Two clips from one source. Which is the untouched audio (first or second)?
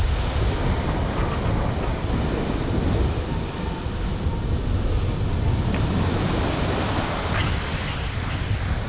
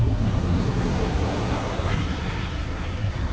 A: first